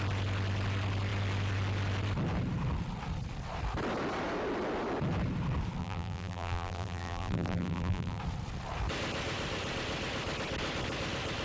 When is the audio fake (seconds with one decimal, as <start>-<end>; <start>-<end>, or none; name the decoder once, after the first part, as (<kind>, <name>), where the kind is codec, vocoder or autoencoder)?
5.8-8.2 (vocoder, BigVGAN v2)